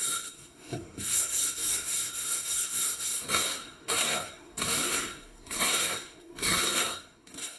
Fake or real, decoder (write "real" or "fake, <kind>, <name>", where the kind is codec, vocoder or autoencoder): fake, codec, SNAC